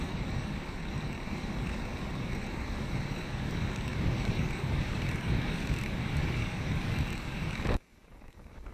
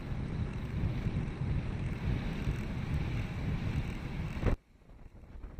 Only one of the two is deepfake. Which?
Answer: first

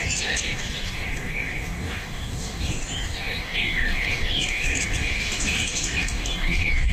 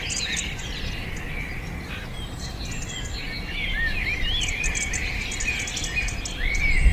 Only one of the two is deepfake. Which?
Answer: first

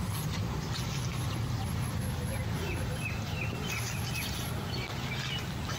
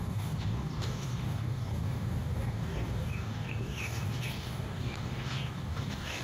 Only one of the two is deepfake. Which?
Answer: second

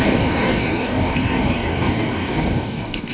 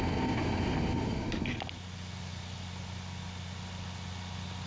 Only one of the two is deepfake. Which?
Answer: first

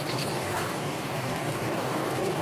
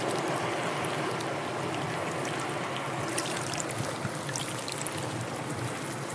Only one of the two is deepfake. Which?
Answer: first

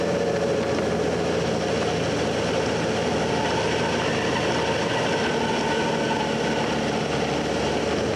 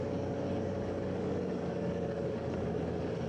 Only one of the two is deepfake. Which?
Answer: second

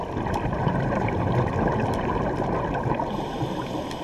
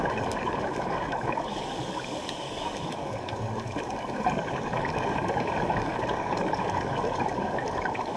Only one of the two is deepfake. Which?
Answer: second